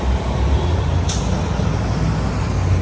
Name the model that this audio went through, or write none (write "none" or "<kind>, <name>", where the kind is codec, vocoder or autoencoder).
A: none